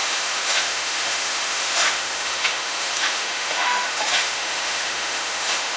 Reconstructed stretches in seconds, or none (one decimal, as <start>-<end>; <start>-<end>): 0.0-5.8